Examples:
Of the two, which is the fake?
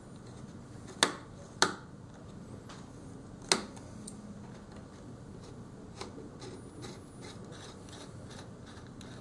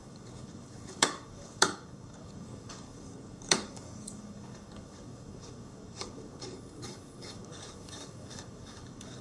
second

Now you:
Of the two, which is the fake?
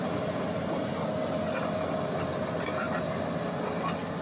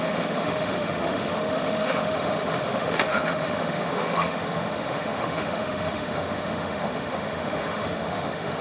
second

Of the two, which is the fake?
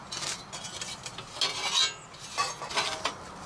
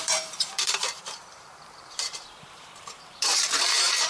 second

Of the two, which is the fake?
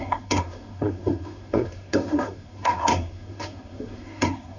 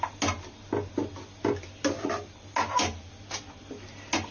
first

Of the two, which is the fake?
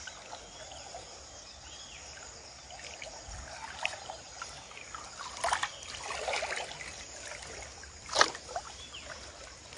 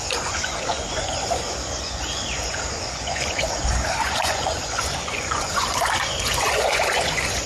second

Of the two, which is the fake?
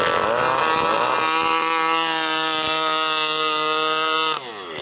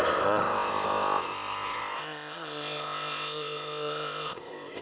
second